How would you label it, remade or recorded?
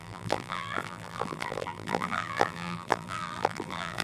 remade